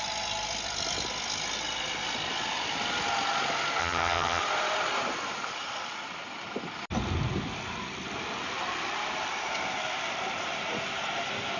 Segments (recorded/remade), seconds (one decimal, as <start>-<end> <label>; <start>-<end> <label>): 0.0-3.8 recorded; 3.8-4.4 remade; 4.4-11.6 recorded